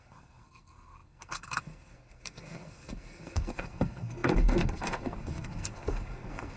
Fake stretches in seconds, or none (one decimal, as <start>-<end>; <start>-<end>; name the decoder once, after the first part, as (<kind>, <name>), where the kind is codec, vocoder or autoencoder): 0.0-6.6 (codec, SNAC)